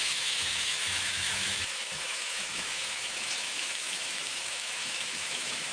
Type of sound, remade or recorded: remade